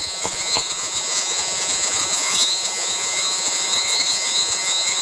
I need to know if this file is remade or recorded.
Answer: remade